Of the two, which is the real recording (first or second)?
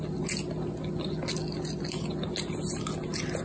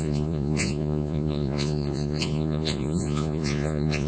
first